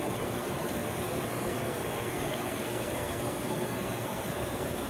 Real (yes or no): no